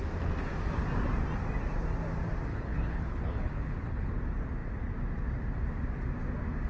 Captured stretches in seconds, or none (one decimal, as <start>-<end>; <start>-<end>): 0.0-2.5; 4.1-6.7